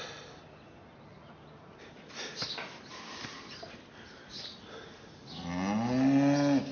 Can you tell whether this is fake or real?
real